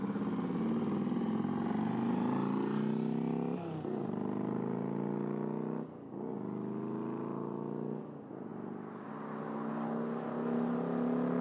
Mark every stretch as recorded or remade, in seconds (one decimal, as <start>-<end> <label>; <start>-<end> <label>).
0.0-11.4 recorded